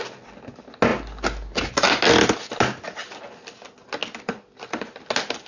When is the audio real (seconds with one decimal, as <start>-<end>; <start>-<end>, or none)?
0.0-5.5